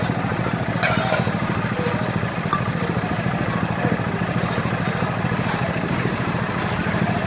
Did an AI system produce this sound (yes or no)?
no